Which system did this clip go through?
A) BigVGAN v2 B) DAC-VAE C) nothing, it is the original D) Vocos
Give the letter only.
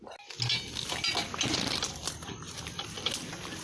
C